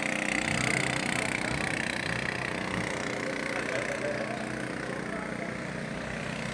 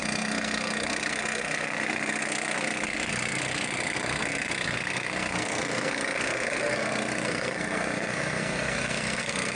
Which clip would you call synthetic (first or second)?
second